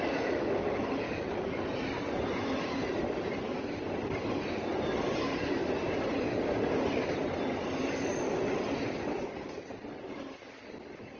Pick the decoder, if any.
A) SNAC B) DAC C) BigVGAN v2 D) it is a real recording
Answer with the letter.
D